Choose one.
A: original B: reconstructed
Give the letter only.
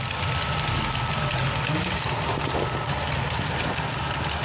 A